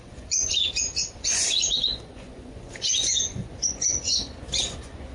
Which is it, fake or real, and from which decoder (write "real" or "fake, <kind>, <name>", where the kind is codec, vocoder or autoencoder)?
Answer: fake, vocoder, Vocos